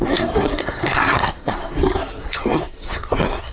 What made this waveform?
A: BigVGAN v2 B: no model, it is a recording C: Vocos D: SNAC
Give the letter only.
D